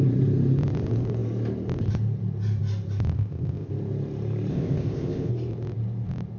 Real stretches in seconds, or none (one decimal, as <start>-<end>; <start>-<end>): 0.0-3.1; 3.7-4.5; 5.3-6.4